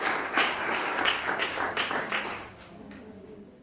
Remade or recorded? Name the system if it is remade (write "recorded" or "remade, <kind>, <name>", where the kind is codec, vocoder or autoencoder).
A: remade, codec, DAC